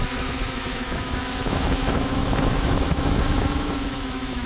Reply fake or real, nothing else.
fake